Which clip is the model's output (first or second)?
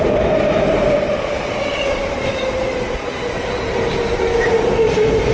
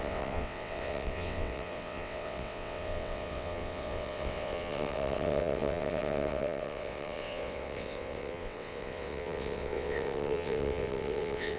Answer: second